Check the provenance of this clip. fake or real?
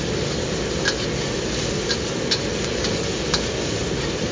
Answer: real